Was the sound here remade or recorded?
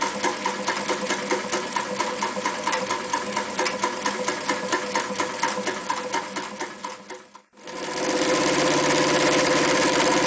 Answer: recorded